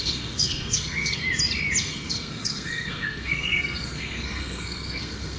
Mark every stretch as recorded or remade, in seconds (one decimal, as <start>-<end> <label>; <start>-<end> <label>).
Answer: 0.0-1.2 remade; 1.2-1.8 recorded; 1.8-5.4 remade

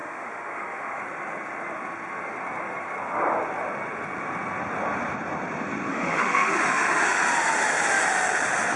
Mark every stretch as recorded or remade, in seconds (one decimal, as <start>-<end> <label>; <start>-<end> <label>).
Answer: 0.0-1.0 remade; 1.0-5.9 recorded; 5.9-7.2 remade; 7.2-8.8 recorded

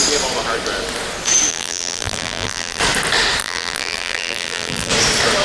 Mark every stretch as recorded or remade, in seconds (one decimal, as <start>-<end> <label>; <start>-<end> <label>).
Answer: 0.0-1.5 recorded; 1.5-2.8 remade; 2.8-3.4 recorded; 3.4-4.9 remade; 4.9-5.4 recorded

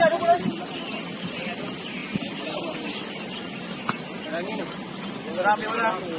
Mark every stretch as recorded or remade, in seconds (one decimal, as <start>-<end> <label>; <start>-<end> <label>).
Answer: 0.0-6.2 recorded